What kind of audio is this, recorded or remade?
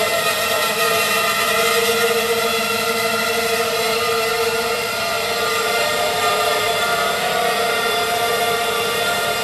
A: remade